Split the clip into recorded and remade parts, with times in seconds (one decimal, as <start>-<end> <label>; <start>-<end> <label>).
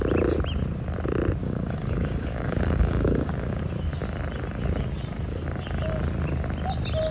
0.0-1.4 recorded; 1.4-3.6 remade; 3.6-7.1 recorded